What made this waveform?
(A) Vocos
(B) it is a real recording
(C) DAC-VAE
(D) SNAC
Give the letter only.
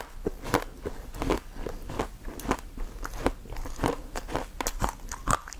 B